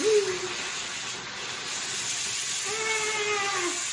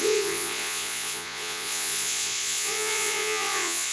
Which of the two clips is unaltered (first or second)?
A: first